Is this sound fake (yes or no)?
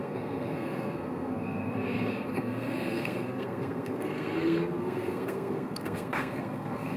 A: yes